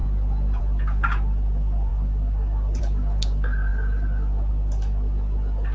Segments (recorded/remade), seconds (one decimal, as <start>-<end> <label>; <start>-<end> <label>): 0.0-5.7 recorded